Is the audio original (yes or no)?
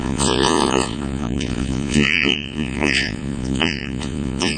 no